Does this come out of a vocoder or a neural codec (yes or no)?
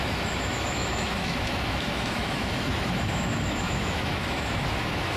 yes